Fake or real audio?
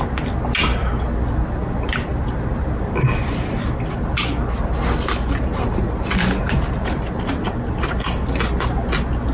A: real